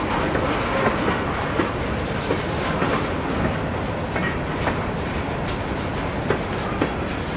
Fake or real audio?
real